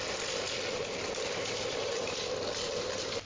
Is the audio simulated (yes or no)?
no